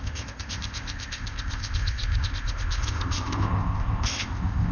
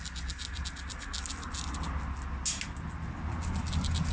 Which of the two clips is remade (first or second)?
first